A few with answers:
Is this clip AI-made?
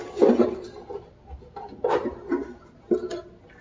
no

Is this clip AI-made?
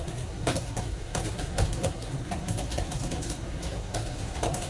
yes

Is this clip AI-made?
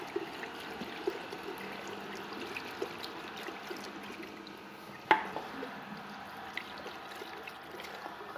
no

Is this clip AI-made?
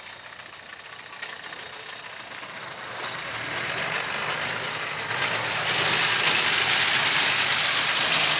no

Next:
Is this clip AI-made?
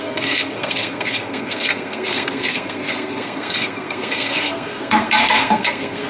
yes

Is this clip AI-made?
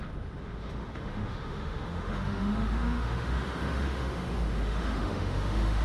yes